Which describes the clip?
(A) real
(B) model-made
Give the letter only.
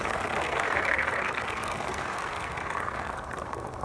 B